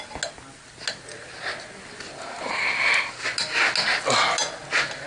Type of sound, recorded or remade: recorded